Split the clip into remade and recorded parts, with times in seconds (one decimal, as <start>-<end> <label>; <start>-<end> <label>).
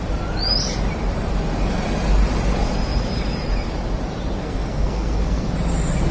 0.0-4.4 recorded; 4.4-5.5 remade; 5.5-6.1 recorded